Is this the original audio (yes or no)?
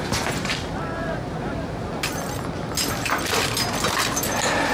yes